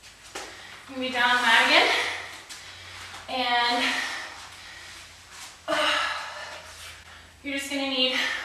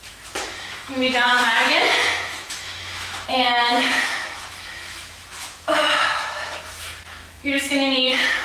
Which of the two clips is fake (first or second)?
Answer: second